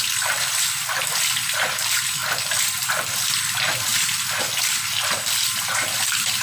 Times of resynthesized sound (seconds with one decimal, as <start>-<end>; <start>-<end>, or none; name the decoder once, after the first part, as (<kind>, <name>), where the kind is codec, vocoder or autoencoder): none